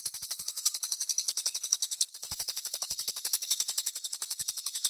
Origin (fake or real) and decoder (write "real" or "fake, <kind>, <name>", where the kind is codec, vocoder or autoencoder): fake, codec, SNAC